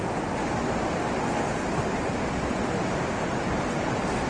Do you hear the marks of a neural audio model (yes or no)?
no